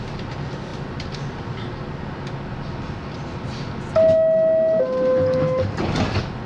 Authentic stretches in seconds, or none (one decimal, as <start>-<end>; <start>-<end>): 0.0-6.5